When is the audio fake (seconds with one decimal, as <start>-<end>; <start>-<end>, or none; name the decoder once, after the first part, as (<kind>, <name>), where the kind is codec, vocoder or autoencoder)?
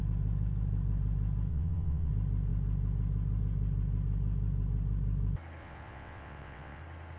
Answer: 1.5-2.1 (vocoder, WaveNeXt); 5.6-6.8